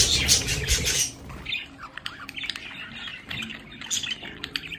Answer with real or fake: real